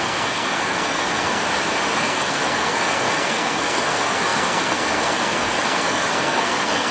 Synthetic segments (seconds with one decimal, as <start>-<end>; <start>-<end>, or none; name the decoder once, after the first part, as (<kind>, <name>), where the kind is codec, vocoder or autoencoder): 0.0-1.4 (codec, SNAC); 2.0-6.9